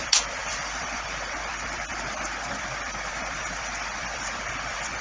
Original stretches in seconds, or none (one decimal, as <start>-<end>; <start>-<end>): none